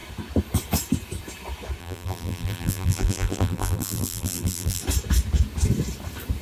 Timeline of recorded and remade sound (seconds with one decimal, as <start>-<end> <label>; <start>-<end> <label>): 0.0-1.8 recorded; 1.8-4.8 remade; 4.8-6.4 recorded

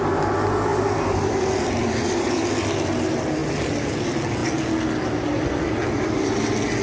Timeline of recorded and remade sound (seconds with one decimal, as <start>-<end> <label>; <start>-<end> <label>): 0.0-0.7 recorded; 0.7-1.9 remade; 1.9-6.8 recorded

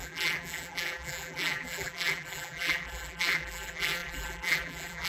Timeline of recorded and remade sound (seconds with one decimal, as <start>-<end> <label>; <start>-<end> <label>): 0.0-5.1 remade